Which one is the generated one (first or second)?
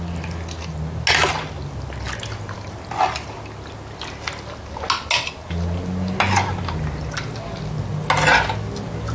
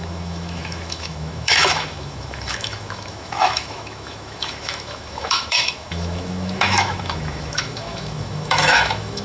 second